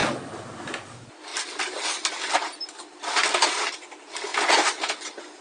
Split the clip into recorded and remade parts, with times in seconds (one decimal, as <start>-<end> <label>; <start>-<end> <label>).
0.0-5.4 recorded